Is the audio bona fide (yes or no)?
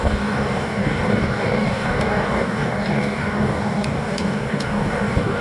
no